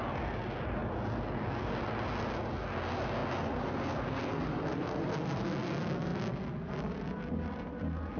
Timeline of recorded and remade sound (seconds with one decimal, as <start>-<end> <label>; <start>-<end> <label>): 0.0-8.2 recorded